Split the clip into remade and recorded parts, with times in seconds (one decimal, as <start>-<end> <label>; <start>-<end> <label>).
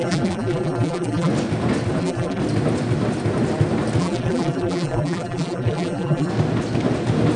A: 0.0-1.3 remade; 1.3-2.0 recorded; 2.0-2.4 remade; 2.4-4.0 recorded; 4.0-6.3 remade; 6.3-7.4 recorded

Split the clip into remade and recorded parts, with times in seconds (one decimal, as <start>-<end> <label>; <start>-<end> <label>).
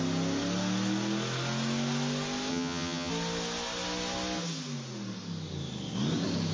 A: 0.0-2.5 recorded; 2.5-3.1 remade; 3.1-6.5 recorded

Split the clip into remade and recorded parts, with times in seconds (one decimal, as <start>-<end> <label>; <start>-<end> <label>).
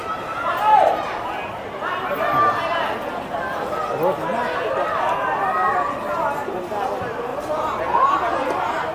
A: 0.0-8.9 recorded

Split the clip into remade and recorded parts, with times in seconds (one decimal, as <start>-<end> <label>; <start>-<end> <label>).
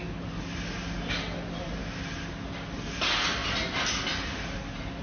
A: 0.0-5.0 recorded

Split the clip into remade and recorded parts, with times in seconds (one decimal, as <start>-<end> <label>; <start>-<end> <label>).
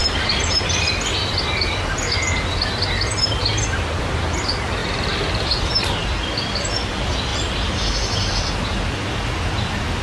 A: 0.0-3.4 recorded; 3.4-4.0 remade; 4.0-4.8 recorded; 4.8-6.1 remade; 6.1-7.3 recorded; 7.3-8.3 remade; 8.3-10.0 recorded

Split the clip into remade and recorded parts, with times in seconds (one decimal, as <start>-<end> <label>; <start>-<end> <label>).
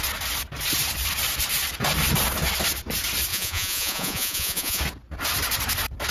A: 0.0-3.3 recorded; 3.3-4.8 remade; 4.8-6.1 recorded